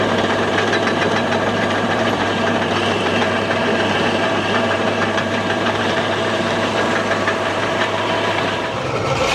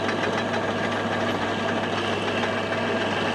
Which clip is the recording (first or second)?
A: second